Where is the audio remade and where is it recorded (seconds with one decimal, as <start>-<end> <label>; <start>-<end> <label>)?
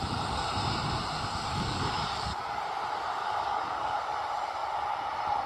0.0-1.5 recorded; 1.5-2.6 remade; 2.6-3.2 recorded; 3.2-4.0 remade; 4.0-5.5 recorded